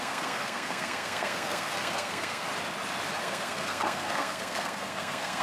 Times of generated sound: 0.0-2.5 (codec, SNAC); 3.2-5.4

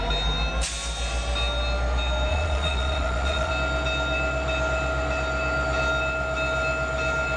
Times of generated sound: 2.3-3.5 (vocoder, Vocos)

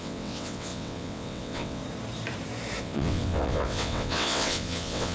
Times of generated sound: 0.0-1.8 (vocoder, WaveNeXt); 2.8-5.1

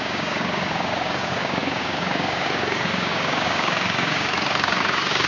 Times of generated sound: 0.0-5.3 (codec, DAC)